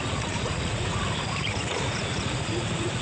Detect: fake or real fake